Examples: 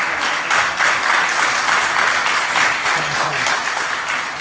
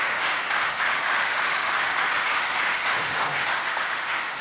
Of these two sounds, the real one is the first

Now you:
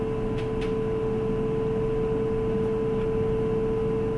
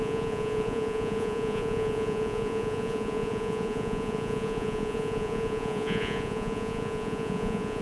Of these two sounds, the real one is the first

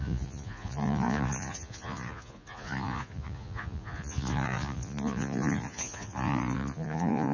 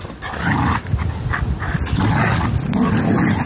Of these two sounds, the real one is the second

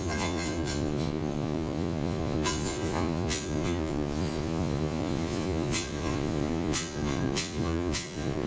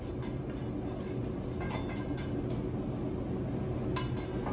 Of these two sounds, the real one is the second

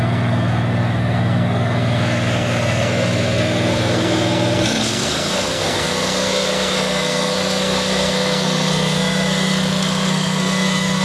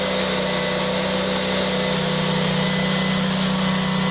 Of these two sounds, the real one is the second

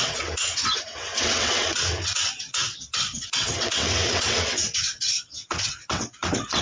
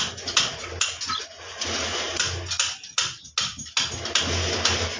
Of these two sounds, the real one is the second